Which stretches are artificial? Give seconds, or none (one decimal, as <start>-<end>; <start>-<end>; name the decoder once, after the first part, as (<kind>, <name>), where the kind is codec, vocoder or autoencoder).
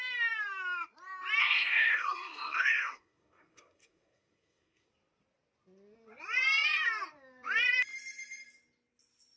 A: 1.4-4.9 (codec, SNAC)